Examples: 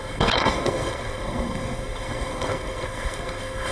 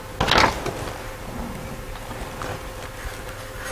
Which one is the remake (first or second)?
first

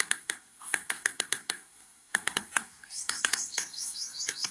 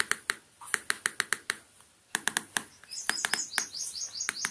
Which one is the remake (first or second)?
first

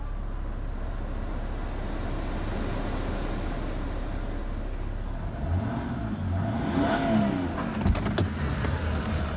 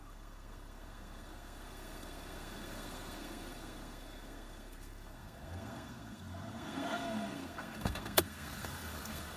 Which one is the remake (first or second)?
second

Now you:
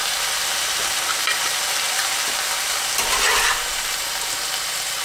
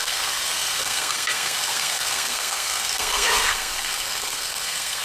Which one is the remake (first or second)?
second